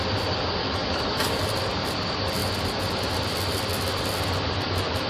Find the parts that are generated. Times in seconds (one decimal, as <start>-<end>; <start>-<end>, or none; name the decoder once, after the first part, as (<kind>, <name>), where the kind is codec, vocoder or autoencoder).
0.6-1.4 (codec, DAC)